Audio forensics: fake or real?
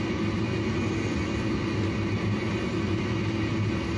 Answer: real